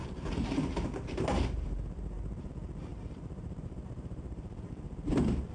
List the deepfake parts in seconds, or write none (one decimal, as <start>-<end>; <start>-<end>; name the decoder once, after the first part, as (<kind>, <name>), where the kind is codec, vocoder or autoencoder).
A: 0.0-2.5 (vocoder, BigVGAN v2); 2.9-5.1